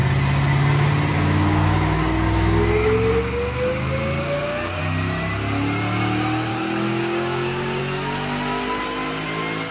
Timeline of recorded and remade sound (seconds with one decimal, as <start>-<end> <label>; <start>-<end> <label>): 0.0-1.1 recorded; 1.1-4.8 remade; 4.8-6.5 recorded; 6.5-7.8 remade; 7.8-9.7 recorded